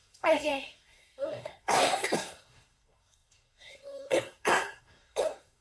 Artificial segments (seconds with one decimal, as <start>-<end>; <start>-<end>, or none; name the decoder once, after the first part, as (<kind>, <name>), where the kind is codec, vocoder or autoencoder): 0.0-5.6 (codec, SNAC)